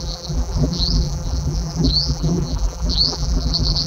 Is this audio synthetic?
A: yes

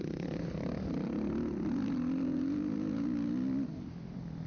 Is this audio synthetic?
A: no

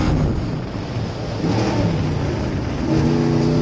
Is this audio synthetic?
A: no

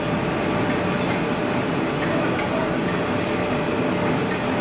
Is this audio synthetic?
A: no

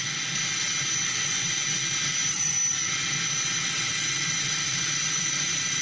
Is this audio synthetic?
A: no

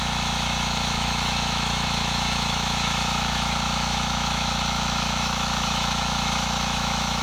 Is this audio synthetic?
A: yes